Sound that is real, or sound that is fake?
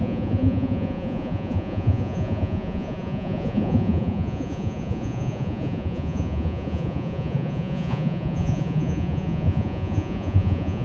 fake